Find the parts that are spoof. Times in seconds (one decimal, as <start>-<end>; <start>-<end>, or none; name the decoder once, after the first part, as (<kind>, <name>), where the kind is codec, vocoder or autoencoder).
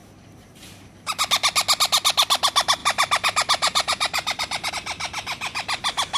0.0-1.1 (vocoder, BigVGAN v2); 2.8-4.7